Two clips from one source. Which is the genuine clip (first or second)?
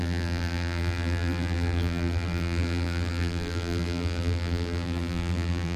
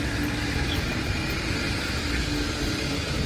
second